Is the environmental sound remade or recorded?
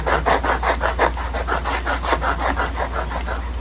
recorded